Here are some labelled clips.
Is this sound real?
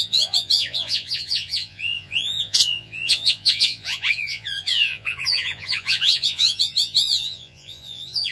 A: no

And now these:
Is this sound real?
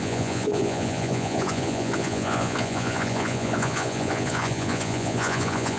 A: no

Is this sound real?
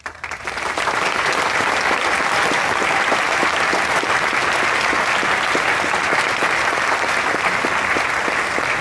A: yes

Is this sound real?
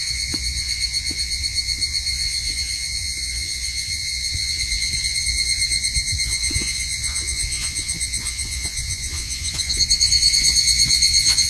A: no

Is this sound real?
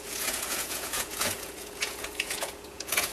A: no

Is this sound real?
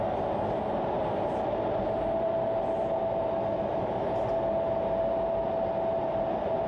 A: yes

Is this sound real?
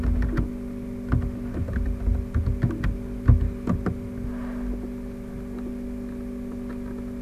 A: yes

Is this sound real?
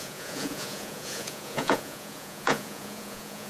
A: no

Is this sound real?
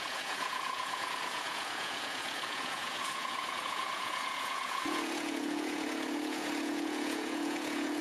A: no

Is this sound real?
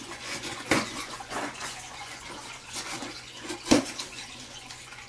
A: no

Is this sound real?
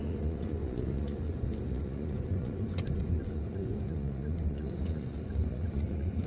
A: no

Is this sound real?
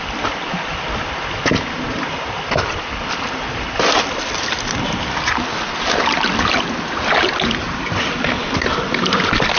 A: yes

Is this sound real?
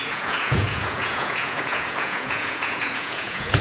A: no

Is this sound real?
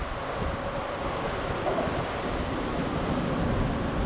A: yes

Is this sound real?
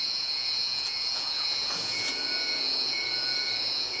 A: no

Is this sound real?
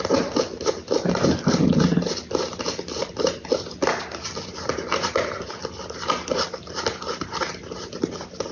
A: yes